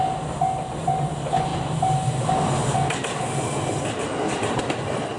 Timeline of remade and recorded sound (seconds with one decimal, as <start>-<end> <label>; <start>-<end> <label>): 0.0-5.2 recorded